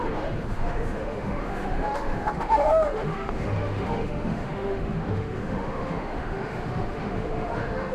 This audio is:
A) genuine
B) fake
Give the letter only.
B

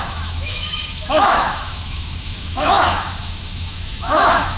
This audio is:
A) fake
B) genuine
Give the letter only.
A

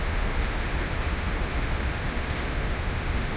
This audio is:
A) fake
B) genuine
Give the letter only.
A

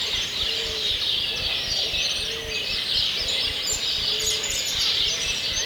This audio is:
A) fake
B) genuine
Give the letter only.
B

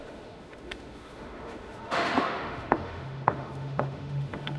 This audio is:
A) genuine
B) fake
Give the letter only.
B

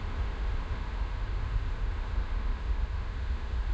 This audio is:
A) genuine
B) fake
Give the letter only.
B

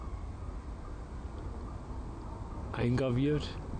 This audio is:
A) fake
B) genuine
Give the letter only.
B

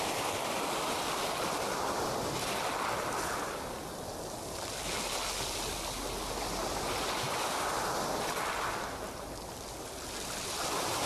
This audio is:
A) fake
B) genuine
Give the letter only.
B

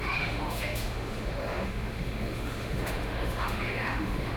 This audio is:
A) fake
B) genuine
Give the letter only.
A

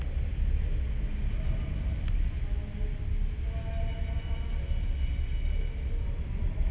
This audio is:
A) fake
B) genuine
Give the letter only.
B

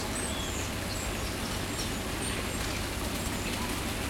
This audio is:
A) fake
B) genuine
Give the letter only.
B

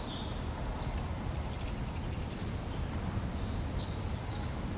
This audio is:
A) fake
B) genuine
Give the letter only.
B